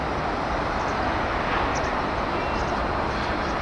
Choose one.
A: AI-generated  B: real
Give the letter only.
B